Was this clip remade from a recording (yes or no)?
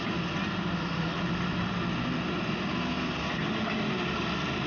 no